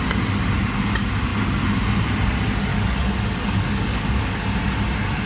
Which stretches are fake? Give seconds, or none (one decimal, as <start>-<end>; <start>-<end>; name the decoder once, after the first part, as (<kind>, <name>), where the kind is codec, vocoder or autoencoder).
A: 2.7-4.4 (codec, DAC)